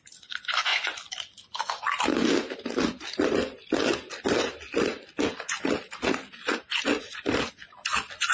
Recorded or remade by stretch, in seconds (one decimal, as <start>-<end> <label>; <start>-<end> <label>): 0.0-8.3 recorded